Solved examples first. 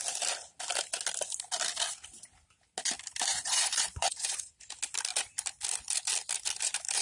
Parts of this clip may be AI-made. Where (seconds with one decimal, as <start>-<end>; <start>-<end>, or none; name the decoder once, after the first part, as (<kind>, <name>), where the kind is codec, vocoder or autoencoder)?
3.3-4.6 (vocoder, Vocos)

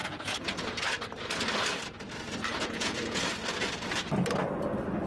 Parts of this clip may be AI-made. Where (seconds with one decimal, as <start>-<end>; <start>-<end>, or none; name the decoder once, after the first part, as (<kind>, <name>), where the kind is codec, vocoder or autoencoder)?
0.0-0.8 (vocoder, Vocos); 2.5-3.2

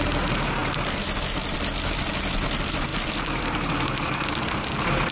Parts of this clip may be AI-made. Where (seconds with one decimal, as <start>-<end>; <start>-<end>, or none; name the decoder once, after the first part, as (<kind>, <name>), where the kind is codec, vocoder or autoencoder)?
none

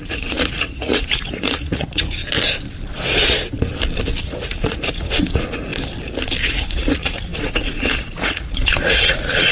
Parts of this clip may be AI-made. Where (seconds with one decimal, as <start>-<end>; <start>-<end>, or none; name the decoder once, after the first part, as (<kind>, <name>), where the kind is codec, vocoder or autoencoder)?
0.0-2.2 (vocoder, Vocos); 4.2-5.7; 6.4-9.5

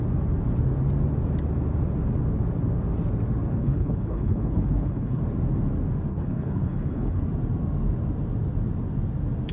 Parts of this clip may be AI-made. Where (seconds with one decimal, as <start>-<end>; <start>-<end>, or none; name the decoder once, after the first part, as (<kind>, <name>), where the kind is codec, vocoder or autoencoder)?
3.6-5.2 (codec, HILCodec); 6.1-7.2